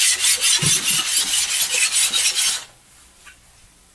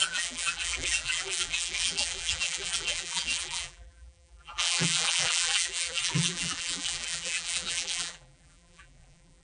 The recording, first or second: first